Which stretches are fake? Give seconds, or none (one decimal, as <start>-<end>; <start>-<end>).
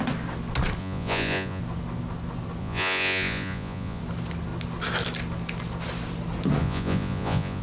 0.8-1.6; 2.6-4.0; 6.6-7.6